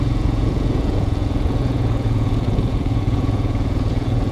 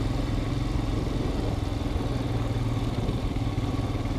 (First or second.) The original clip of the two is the second